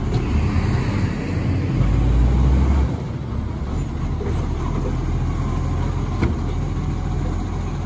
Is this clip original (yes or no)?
yes